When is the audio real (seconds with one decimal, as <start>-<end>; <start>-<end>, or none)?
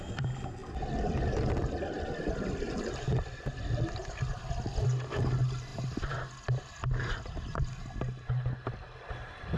0.0-9.6